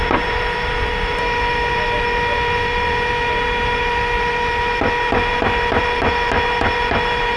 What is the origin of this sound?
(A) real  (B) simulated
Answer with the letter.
B